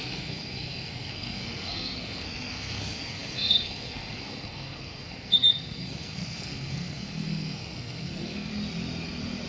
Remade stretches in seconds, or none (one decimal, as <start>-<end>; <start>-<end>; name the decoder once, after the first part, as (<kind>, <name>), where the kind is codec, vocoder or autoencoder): 0.0-8.5 (codec, SNAC)